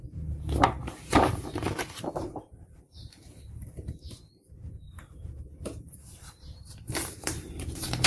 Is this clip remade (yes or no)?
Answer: yes